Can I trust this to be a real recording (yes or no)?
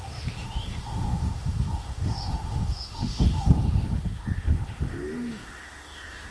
no